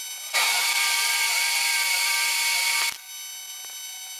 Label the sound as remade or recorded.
recorded